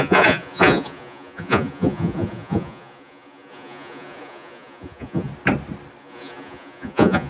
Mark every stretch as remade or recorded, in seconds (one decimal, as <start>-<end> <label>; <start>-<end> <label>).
0.0-5.3 remade; 5.3-6.0 recorded; 6.0-7.3 remade